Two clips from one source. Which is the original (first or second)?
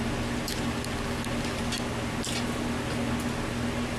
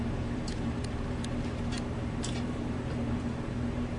first